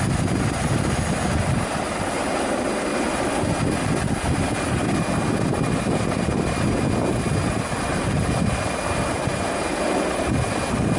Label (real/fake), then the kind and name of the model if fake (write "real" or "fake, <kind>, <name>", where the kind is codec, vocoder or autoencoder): real